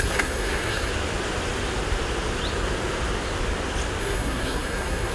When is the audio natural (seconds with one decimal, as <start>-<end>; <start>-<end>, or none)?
0.9-4.0